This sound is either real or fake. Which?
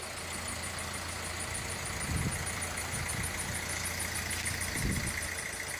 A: real